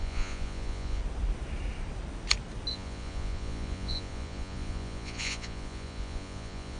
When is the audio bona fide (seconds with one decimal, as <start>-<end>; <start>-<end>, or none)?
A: 1.0-2.7